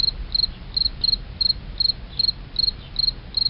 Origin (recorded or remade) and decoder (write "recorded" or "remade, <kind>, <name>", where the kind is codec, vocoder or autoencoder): recorded